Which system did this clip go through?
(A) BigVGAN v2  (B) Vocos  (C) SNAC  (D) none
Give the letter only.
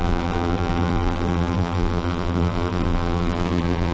A